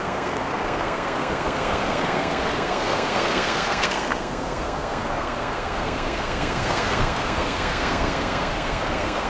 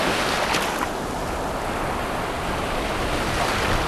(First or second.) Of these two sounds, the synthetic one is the first